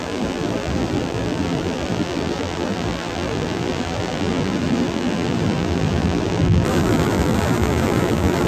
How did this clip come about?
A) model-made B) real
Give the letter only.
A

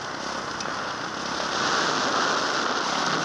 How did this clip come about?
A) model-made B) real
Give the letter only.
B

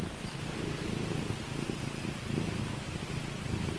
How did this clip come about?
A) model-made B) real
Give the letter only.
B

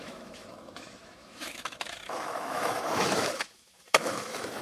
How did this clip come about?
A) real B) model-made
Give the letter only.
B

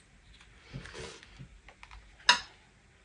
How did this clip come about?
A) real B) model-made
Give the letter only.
A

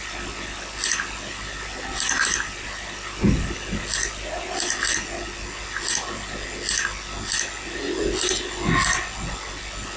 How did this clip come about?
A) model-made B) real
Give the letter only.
B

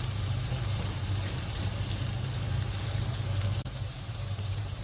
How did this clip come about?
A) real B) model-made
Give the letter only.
B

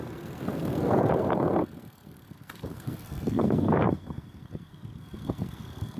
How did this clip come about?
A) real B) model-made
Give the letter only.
B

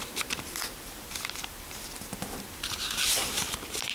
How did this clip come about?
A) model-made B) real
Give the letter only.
A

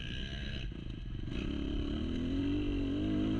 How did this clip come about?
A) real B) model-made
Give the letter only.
A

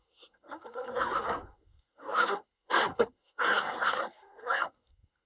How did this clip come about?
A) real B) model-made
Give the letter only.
B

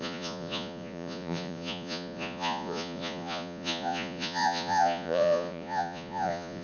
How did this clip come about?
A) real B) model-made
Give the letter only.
B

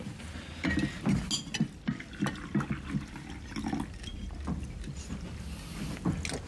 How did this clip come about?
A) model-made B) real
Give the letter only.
B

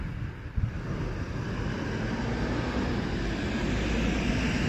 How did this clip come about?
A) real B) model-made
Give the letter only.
A